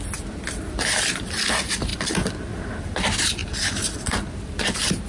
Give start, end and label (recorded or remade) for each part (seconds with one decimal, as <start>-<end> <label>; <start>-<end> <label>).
0.0-1.9 recorded; 1.9-2.8 remade; 2.8-3.4 recorded; 3.4-4.5 remade; 4.5-5.1 recorded